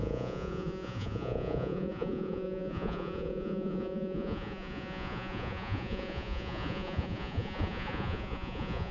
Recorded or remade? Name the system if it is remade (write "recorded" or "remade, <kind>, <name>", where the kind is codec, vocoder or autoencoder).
remade, vocoder, Vocos